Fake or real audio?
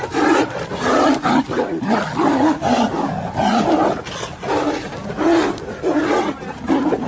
real